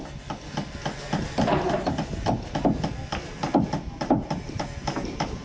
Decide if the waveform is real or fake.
real